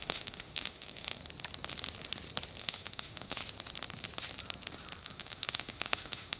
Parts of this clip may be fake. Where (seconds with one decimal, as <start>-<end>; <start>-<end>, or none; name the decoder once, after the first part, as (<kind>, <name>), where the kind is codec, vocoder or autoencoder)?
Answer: 0.0-1.2 (autoencoder, DAC-VAE); 2.6-3.4; 5.0-6.4